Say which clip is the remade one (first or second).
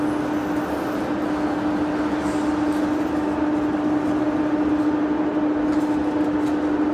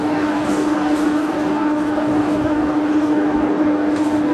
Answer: second